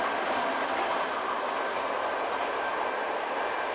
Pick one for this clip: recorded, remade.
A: recorded